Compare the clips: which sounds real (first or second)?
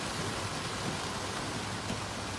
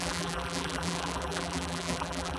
first